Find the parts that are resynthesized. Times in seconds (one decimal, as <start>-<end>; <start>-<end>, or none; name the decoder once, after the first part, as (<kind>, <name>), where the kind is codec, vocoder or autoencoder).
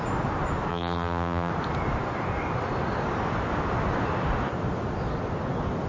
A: 0.7-1.5 (vocoder, BigVGAN v2)